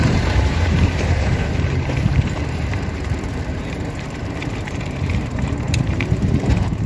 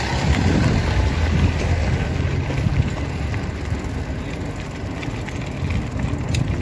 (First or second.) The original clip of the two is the second